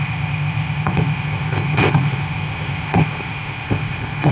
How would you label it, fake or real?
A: fake